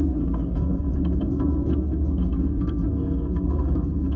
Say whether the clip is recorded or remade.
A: remade